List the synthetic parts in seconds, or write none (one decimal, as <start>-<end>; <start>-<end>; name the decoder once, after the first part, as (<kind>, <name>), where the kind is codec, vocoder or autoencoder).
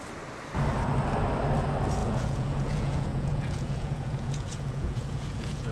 2.0-5.7 (vocoder, Vocos)